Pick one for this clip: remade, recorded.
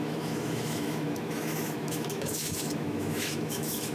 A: remade